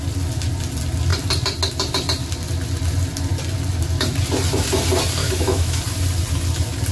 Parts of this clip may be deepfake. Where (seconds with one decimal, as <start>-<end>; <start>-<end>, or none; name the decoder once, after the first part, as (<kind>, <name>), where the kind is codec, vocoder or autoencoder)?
5.2-5.8 (autoencoder, DAC-VAE)